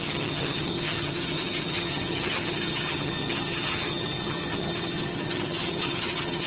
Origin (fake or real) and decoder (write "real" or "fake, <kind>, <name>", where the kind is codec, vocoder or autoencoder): fake, vocoder, HiFi-GAN